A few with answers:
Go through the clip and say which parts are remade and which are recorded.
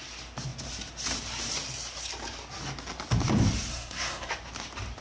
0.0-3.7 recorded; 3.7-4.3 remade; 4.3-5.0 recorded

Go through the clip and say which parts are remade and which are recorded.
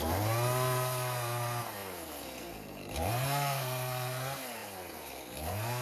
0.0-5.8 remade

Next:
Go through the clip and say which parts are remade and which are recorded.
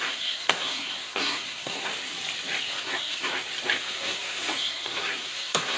0.0-1.9 remade; 1.9-2.7 recorded; 2.7-3.3 remade; 3.3-3.8 recorded; 3.8-5.8 remade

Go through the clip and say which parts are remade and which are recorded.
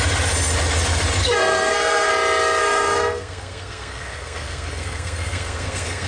0.0-1.2 recorded; 1.2-2.1 remade; 2.1-2.6 recorded; 2.6-6.1 remade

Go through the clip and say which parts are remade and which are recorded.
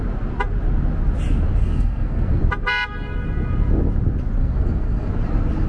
0.0-1.6 recorded; 1.6-2.4 remade; 2.4-4.4 recorded; 4.4-5.1 remade; 5.1-5.7 recorded